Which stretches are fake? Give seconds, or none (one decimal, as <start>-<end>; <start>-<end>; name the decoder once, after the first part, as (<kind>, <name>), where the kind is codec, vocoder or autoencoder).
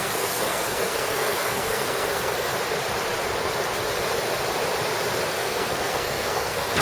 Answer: 0.0-2.5 (codec, SNAC); 5.3-6.8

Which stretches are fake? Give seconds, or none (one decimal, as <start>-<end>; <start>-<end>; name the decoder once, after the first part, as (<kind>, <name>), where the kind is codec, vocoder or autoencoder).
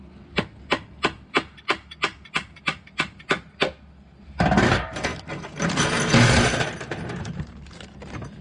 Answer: 5.1-5.8 (vocoder, BigVGAN v2)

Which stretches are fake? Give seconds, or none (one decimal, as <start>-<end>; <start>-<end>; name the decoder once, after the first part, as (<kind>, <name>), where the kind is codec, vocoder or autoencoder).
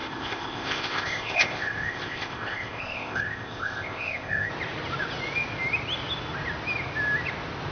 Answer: 0.0-4.5 (codec, ZipCodec)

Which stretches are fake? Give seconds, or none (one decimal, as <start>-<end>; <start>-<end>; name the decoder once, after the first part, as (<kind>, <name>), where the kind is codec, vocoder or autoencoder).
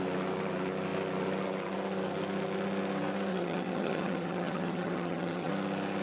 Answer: 3.3-5.5 (vocoder, HiFi-GAN)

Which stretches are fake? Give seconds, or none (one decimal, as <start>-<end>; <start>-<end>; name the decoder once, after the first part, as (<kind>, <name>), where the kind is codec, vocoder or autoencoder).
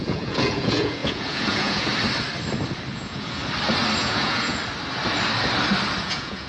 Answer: 0.0-1.9 (vocoder, Vocos); 2.9-3.4; 4.0-4.6; 6.0-6.5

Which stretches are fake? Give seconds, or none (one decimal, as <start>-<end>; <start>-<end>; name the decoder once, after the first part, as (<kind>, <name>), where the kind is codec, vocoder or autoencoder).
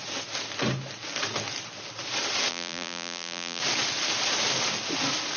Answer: 2.5-3.6 (vocoder, BigVGAN v2)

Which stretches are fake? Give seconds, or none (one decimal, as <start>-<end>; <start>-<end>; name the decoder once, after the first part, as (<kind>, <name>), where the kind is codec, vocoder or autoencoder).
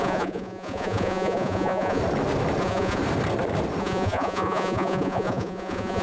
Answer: 0.0-2.0 (vocoder, Vocos); 2.6-3.0; 3.8-6.0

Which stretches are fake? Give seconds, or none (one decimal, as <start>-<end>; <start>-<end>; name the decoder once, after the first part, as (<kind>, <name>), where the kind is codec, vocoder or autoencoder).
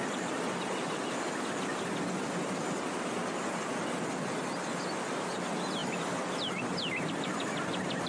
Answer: none